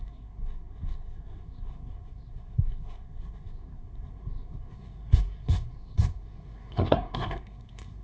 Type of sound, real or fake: fake